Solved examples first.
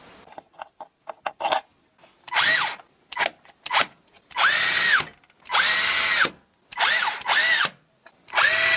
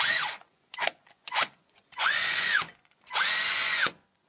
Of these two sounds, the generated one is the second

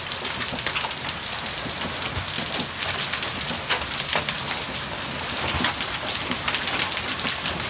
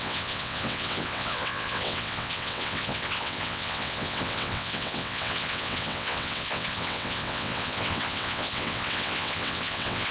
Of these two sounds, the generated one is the second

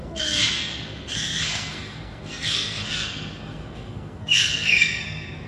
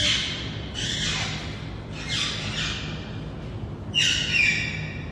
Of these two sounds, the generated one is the first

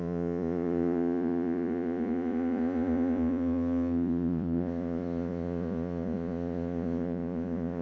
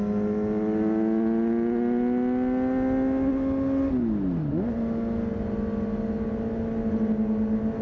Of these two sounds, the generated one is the first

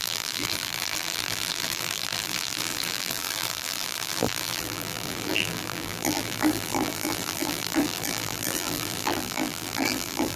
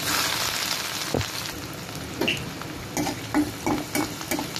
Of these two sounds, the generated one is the first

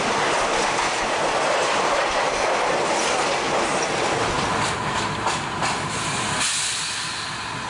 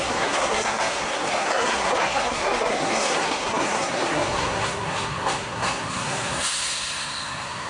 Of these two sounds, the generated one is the second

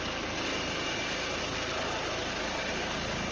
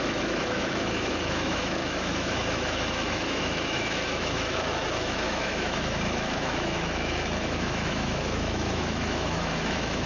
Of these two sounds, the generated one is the second